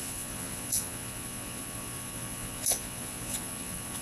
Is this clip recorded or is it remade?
remade